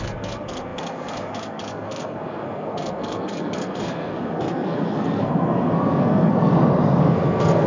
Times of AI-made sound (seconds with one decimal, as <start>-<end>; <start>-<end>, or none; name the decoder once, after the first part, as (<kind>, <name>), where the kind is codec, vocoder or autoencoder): 0.0-6.5 (codec, SNAC); 7.0-7.7